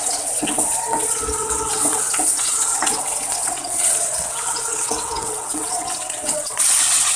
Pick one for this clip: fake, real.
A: fake